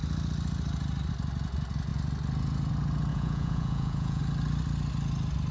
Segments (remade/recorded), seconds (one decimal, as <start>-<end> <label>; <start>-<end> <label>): 0.0-3.1 recorded; 3.1-4.2 remade; 4.2-5.5 recorded